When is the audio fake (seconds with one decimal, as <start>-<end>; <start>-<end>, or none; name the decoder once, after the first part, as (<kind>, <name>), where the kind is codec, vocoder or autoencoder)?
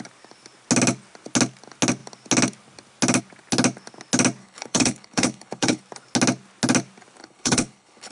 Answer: 4.4-5.8 (codec, HILCodec); 7.2-8.1